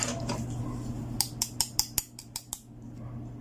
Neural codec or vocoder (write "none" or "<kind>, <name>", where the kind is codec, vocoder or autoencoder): none